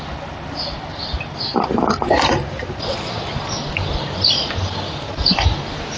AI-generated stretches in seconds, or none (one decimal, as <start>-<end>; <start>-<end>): none